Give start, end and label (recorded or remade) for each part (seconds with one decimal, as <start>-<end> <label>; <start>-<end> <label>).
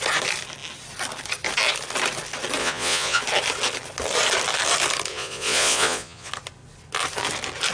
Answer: 0.0-2.6 recorded; 2.6-3.2 remade; 3.2-5.1 recorded; 5.1-6.3 remade; 6.3-7.7 recorded